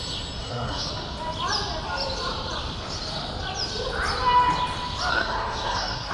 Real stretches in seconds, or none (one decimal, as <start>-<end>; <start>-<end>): 0.0-0.4; 0.9-5.1